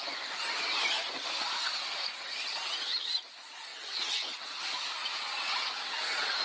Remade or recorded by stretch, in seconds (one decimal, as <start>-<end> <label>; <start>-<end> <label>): 0.0-3.7 recorded; 3.7-4.6 remade; 4.6-5.0 recorded; 5.0-6.0 remade; 6.0-6.4 recorded